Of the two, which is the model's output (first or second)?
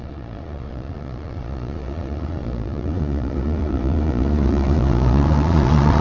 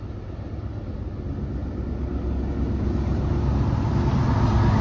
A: first